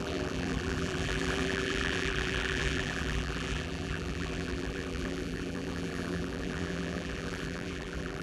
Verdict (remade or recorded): remade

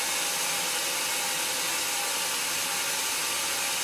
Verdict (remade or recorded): recorded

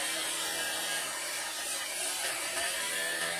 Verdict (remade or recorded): remade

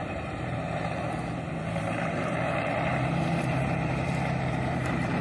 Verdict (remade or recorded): remade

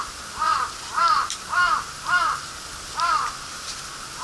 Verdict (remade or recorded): remade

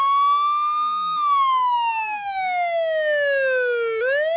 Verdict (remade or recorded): recorded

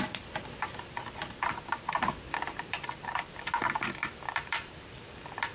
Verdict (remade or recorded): remade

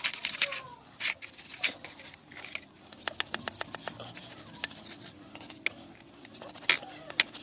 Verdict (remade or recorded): recorded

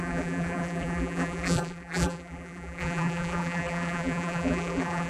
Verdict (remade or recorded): remade